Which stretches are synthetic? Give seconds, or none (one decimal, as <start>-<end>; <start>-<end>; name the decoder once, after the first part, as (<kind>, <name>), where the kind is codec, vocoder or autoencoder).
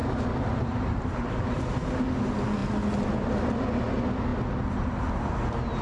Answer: 0.0-1.6 (vocoder, BigVGAN v2)